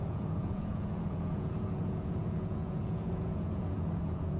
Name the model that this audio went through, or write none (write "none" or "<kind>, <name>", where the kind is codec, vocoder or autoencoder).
vocoder, Vocos